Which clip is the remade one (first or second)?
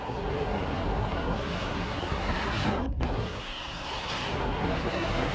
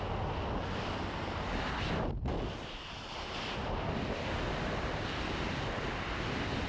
first